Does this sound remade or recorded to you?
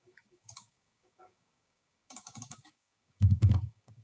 remade